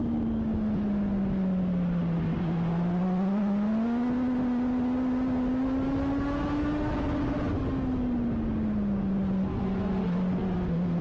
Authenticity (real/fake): real